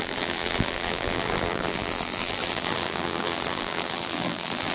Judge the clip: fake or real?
fake